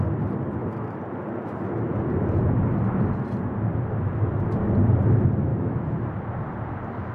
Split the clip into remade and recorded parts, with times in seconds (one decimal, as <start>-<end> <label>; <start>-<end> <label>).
0.0-5.5 recorded; 5.5-6.0 remade; 6.0-7.1 recorded